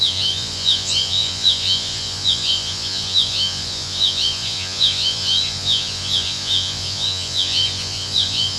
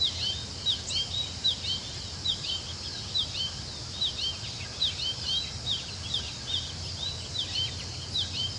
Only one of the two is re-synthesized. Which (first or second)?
first